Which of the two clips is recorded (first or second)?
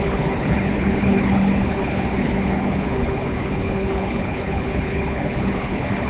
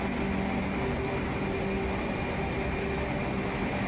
second